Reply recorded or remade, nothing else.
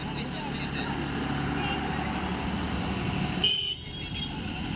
recorded